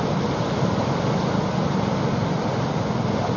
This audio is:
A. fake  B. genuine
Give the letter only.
B